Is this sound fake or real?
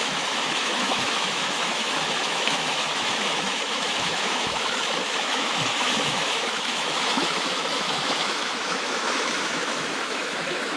fake